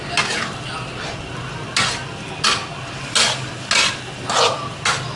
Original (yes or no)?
yes